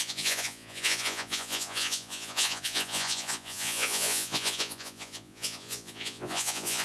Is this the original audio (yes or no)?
no